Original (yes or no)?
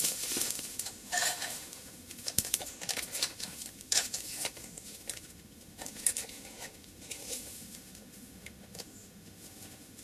no